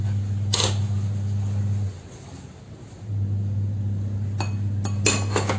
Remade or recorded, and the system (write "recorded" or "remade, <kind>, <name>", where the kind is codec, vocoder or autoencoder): recorded